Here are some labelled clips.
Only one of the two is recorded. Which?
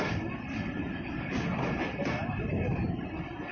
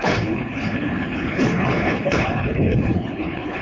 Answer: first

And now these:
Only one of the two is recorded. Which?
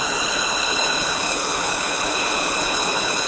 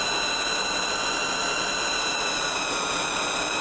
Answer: second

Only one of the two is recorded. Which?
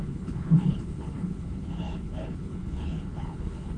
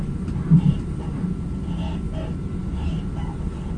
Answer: second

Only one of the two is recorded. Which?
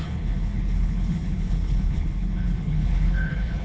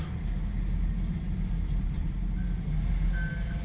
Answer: second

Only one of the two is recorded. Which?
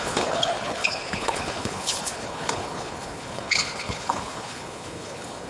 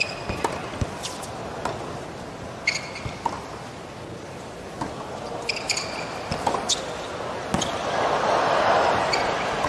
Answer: second